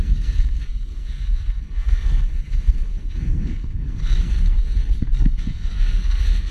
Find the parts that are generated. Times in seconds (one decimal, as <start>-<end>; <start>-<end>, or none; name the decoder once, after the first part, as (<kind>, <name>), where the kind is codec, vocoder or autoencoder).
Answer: 0.0-6.5 (codec, SNAC)